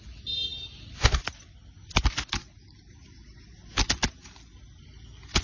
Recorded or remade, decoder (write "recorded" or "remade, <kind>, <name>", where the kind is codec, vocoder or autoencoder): recorded